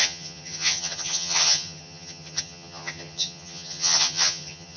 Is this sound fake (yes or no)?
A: yes